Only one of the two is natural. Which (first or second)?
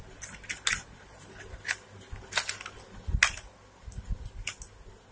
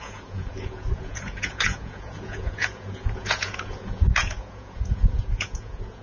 first